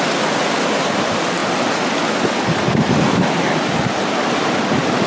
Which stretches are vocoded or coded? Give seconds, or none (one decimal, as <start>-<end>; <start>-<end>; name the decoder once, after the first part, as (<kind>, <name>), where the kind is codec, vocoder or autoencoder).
none